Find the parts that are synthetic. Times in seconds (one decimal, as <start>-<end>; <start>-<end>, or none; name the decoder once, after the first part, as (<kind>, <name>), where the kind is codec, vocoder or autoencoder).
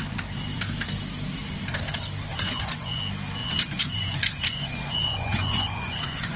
2.3-3.0 (vocoder, Vocos); 3.4-6.4